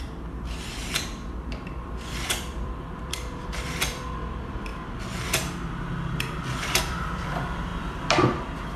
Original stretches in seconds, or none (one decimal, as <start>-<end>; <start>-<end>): 4.7-6.8